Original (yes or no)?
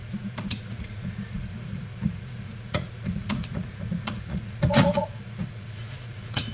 no